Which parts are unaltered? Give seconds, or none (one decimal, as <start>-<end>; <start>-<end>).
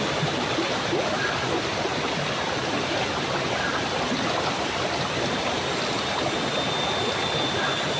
0.0-8.0